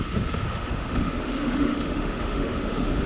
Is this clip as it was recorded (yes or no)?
no